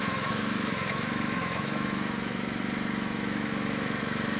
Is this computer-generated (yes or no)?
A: yes